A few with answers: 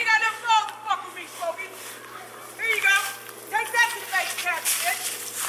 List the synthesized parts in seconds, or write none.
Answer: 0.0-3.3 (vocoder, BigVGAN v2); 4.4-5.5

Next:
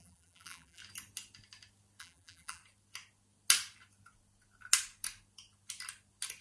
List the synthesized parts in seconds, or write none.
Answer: 0.0-0.8 (vocoder, BigVGAN v2); 2.0-2.6

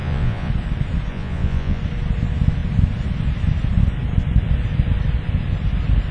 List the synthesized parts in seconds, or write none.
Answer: 0.0-0.5 (vocoder, Vocos); 1.1-1.8

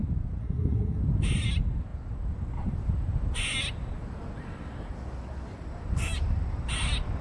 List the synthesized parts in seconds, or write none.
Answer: 0.4-1.0 (codec, SNAC)

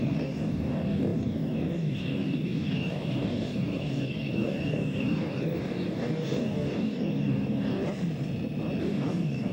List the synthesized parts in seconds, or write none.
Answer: 0.0-7.8 (codec, DAC); 8.8-9.5

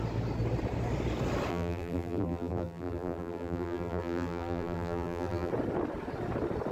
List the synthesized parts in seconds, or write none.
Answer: 1.5-5.5 (vocoder, BigVGAN v2)

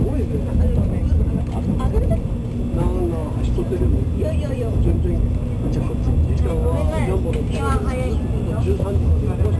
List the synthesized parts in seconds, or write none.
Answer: 3.2-5.1 (vocoder, BigVGAN v2)